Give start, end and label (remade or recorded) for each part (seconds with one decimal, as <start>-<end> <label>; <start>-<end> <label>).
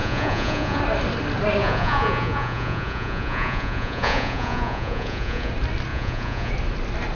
0.0-0.8 remade; 0.8-1.6 recorded; 1.6-5.5 remade; 5.5-5.9 recorded; 5.9-6.5 remade; 6.5-7.1 recorded